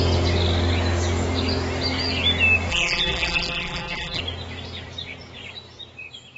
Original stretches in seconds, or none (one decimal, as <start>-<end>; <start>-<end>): 0.0-2.7; 4.2-6.4